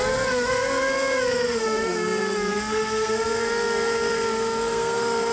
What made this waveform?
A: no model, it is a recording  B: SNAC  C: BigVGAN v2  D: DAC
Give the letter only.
B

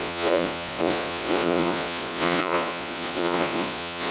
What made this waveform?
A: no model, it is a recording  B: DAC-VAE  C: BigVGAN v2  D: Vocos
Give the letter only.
D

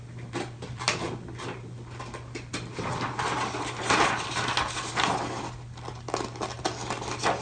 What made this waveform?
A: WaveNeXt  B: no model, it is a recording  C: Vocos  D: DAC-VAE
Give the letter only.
B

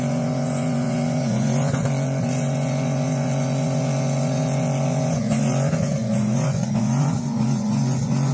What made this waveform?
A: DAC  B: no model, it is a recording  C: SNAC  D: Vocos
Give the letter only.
D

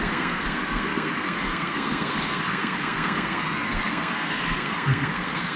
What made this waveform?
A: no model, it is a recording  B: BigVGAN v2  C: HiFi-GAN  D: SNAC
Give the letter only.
D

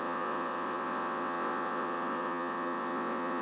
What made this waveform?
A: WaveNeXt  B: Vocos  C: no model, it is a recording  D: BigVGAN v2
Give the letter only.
A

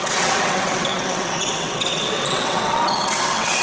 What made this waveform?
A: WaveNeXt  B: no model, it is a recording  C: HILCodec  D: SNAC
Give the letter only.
A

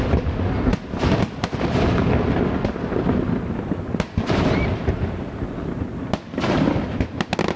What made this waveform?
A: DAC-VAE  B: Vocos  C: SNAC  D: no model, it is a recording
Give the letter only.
D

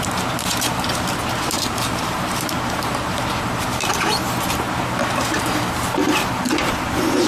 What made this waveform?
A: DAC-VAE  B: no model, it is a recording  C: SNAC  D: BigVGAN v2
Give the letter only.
D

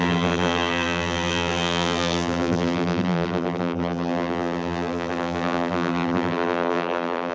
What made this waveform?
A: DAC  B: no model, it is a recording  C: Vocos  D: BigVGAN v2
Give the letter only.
D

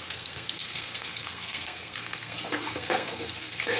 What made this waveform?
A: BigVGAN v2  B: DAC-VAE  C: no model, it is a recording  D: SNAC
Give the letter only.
D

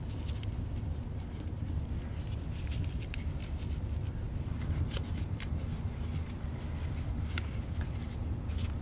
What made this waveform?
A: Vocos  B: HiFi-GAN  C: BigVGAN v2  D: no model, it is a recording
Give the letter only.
D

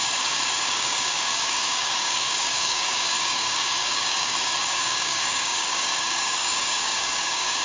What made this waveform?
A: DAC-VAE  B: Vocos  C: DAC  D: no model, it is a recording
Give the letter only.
C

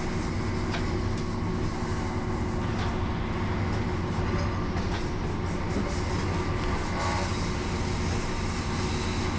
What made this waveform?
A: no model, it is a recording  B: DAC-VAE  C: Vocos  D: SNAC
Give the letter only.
A